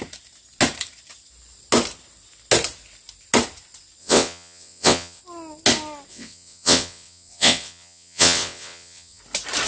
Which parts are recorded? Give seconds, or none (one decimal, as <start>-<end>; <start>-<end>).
0.0-4.0; 5.2-6.1; 9.2-9.7